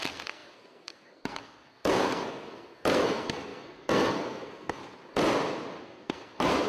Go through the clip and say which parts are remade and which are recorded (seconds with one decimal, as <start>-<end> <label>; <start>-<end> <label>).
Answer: 0.0-4.8 remade; 4.8-5.8 recorded; 5.8-6.7 remade